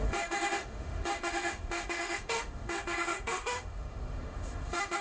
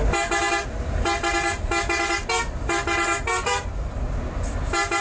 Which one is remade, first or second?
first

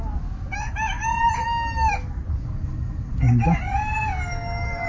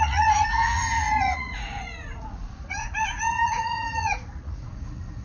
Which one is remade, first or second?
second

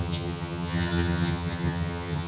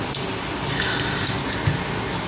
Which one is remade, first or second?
first